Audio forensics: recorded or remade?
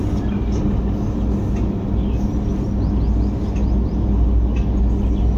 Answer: recorded